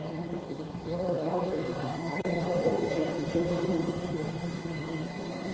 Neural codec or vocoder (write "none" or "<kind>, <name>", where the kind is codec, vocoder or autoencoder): codec, SNAC